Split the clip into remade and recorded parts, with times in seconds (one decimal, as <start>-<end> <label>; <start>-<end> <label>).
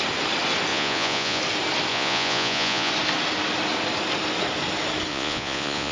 0.0-0.7 recorded; 0.7-1.4 remade; 1.4-1.9 recorded; 1.9-2.9 remade; 2.9-5.1 recorded; 5.1-5.9 remade